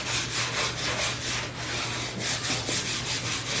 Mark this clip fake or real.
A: real